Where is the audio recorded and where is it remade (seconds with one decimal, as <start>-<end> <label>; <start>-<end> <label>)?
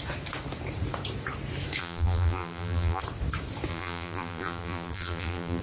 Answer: 0.0-1.8 recorded; 1.8-3.0 remade; 3.0-3.7 recorded; 3.7-5.6 remade